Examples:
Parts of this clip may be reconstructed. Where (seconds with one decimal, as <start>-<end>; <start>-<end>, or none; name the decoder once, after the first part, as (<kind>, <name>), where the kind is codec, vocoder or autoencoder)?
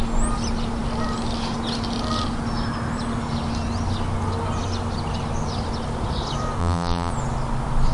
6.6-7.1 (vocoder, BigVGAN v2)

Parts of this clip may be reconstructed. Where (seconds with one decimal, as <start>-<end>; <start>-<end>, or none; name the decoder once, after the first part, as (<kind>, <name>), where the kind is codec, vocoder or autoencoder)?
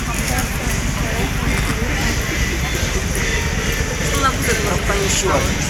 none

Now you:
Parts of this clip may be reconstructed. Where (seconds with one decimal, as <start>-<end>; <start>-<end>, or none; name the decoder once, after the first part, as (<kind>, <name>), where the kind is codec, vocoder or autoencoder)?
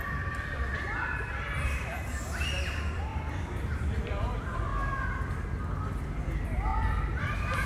0.0-3.1 (vocoder, BigVGAN v2); 4.0-4.7; 5.3-7.7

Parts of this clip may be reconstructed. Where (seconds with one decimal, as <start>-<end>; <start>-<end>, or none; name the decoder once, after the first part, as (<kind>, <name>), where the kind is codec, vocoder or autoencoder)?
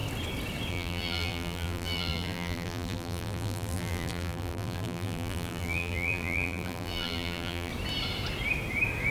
0.7-7.7 (vocoder, BigVGAN v2)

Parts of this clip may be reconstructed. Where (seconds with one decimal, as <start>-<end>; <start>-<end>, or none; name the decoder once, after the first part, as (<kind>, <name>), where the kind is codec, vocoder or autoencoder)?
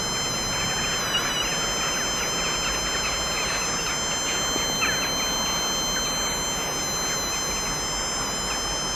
none